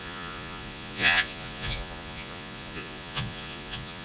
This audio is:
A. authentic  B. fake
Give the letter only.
B